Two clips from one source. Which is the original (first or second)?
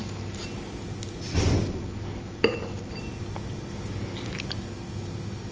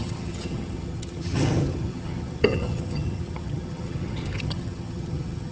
first